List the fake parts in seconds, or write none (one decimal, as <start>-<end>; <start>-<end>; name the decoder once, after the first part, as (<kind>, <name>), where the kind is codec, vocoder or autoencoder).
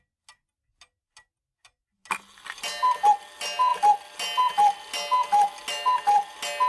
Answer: none